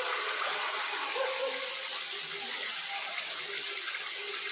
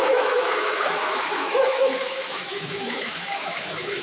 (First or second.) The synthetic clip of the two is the second